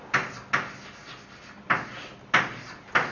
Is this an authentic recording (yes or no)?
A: yes